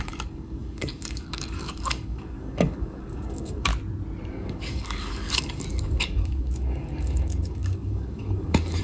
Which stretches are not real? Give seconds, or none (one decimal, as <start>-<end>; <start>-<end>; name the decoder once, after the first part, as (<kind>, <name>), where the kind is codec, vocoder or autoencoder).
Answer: 0.0-3.7 (codec, DAC); 4.3-8.8